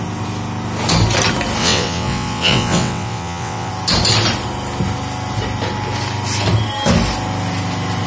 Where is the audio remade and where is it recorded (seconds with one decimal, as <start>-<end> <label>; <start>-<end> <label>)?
0.0-1.6 recorded; 1.6-3.7 remade; 3.7-8.1 recorded